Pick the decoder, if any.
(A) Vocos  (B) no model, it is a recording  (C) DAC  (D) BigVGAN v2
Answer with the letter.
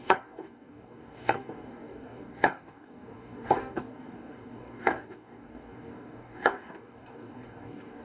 C